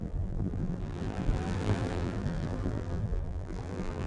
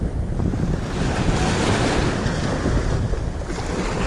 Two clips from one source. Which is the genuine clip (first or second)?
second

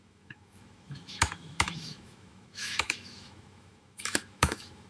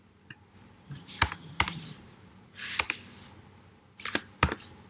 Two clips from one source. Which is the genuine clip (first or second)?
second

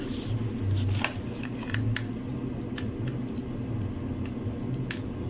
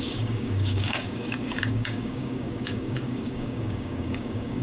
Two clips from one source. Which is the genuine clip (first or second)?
first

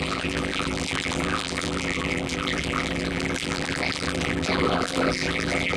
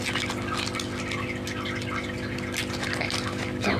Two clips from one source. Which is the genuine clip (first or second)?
second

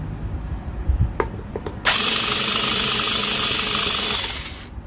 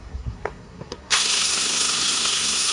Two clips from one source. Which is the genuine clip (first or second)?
first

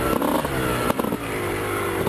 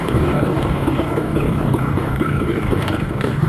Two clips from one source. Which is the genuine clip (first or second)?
first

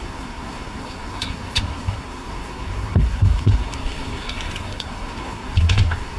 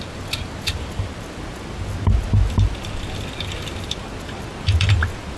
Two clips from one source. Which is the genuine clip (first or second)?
second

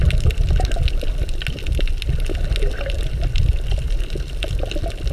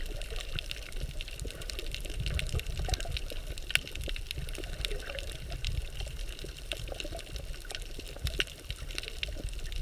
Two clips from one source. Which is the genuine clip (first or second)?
first